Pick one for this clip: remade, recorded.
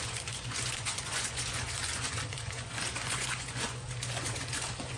remade